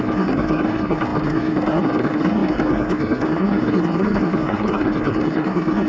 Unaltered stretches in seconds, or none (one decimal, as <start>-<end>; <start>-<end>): none